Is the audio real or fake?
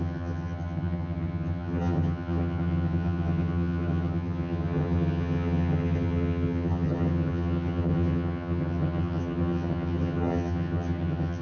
fake